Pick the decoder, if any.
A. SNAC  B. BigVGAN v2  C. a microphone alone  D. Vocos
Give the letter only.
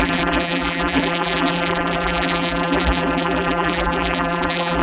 B